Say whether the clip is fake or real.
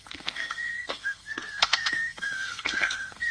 fake